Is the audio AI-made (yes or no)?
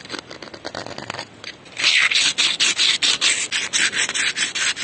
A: no